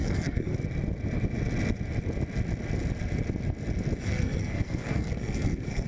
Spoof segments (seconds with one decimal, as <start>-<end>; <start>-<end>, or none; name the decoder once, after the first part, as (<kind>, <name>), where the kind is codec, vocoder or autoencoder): 0.0-0.5 (codec, SNAC); 4.0-5.9